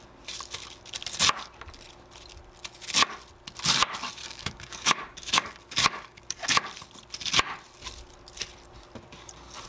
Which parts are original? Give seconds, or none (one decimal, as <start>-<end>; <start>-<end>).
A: 0.0-4.2; 6.4-9.7